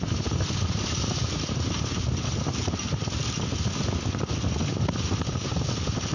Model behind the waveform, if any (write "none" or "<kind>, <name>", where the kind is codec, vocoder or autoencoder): none